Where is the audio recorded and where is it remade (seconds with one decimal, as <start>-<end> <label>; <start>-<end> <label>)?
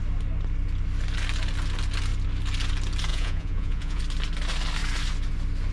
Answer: 0.0-3.1 recorded; 3.1-4.0 remade; 4.0-5.7 recorded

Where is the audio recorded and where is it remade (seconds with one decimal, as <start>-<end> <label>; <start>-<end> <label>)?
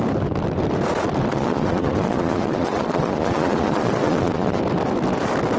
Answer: 0.0-1.3 recorded; 1.3-4.6 remade; 4.6-5.6 recorded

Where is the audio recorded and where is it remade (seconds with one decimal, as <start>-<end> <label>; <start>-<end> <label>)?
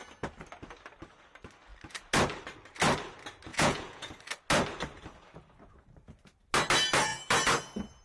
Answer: 0.0-3.5 recorded; 3.5-4.1 remade; 4.1-8.0 recorded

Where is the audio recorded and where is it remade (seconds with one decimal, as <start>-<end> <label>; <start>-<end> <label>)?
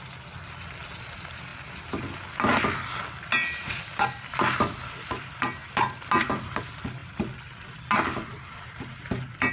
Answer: 0.0-9.5 recorded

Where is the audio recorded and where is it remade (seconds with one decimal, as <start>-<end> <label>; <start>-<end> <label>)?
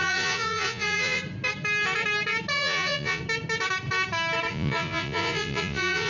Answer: 0.0-1.2 remade; 1.2-2.5 recorded; 2.5-3.2 remade; 3.2-4.5 recorded; 4.5-6.1 remade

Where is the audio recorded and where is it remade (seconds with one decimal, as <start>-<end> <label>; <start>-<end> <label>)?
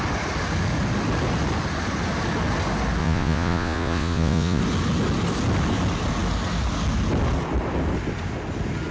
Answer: 0.0-3.0 recorded; 3.0-4.6 remade; 4.6-8.9 recorded